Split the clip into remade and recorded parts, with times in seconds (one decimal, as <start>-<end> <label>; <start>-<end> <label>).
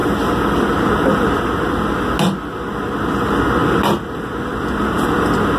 0.0-5.6 recorded